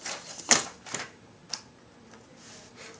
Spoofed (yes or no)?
no